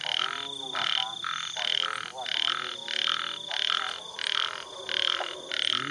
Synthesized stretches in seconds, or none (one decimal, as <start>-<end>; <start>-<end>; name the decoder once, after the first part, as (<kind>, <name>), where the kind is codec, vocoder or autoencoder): none